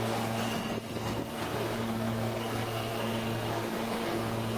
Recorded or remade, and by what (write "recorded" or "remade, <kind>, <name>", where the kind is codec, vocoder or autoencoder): remade, codec, SNAC